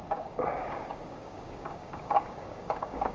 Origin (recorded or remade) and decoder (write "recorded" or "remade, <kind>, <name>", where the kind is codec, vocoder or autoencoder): remade, codec, DAC